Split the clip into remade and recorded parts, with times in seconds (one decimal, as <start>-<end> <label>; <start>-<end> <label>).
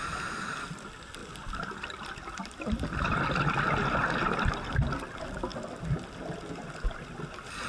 0.0-1.2 recorded; 1.2-3.0 remade; 3.0-5.5 recorded; 5.5-6.4 remade; 6.4-7.7 recorded